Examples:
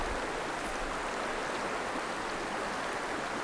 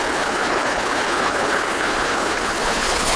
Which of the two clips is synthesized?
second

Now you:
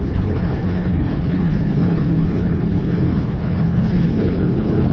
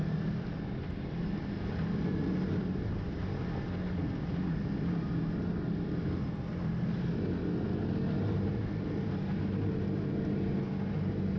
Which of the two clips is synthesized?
first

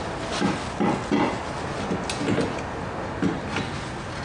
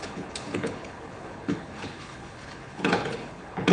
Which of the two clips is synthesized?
second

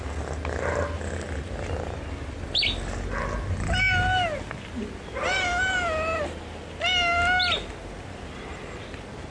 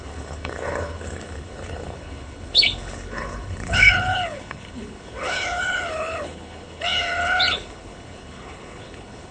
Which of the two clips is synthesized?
second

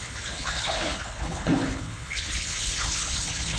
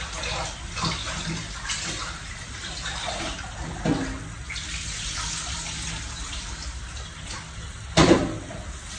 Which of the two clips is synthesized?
first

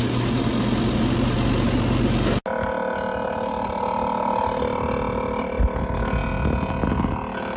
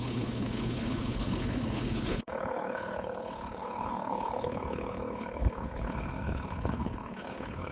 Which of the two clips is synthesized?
second